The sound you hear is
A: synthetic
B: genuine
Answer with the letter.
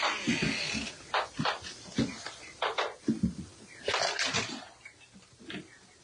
B